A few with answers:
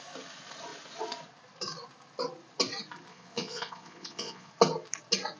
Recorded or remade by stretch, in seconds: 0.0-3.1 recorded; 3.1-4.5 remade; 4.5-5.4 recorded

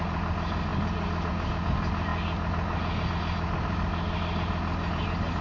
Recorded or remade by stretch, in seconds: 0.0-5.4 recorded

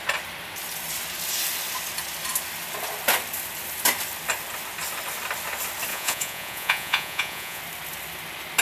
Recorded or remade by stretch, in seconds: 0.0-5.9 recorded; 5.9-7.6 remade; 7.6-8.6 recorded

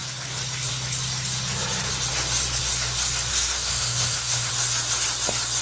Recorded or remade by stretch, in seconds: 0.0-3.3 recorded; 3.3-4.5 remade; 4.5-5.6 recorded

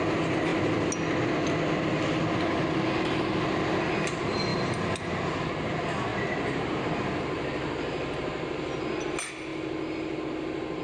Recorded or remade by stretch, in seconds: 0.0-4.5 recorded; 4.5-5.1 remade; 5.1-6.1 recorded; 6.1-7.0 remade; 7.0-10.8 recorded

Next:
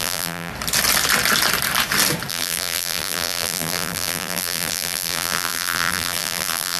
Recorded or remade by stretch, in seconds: 0.0-0.5 remade; 0.5-2.3 recorded; 2.3-6.8 remade

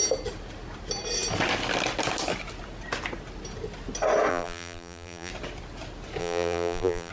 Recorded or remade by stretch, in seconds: 0.0-4.3 recorded; 4.3-5.3 remade; 5.3-6.2 recorded; 6.2-7.1 remade